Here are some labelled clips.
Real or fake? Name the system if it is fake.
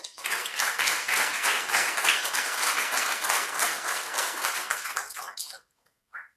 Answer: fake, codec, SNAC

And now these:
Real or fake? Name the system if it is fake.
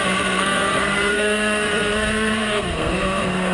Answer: fake, codec, SNAC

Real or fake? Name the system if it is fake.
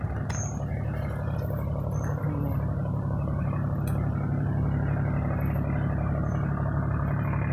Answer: real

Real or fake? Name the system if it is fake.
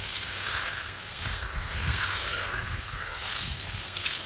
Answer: fake, codec, SNAC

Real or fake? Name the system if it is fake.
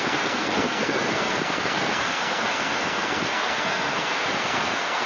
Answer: fake, codec, SNAC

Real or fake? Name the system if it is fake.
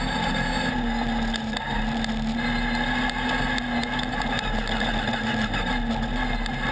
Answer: real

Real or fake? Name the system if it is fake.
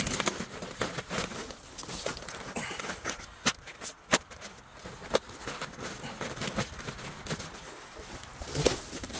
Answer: real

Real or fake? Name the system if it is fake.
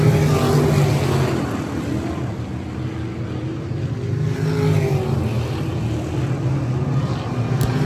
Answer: real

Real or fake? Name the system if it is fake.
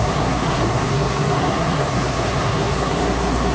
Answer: fake, codec, SNAC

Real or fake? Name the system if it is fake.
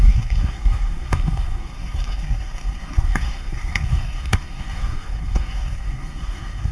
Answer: fake, codec, SNAC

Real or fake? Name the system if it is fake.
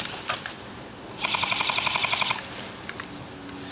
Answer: real